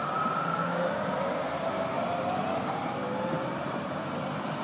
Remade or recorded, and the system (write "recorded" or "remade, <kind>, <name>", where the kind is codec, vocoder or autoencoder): remade, vocoder, BigVGAN v2